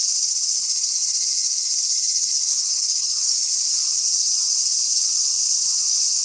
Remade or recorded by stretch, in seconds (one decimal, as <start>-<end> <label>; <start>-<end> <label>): 0.0-2.5 recorded; 2.5-3.5 remade; 3.5-6.2 recorded